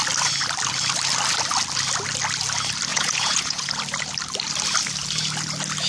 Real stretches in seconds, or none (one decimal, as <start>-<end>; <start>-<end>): 0.0-2.9; 3.7-5.9